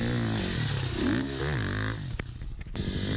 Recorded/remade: recorded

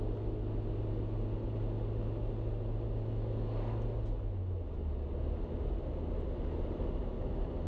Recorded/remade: recorded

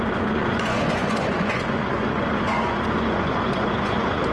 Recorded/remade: remade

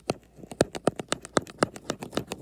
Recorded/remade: recorded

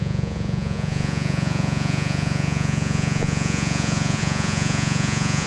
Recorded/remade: remade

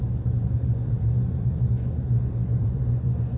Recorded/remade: remade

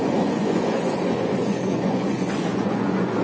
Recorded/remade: remade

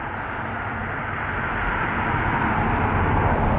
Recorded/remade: recorded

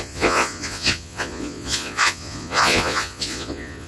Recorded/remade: remade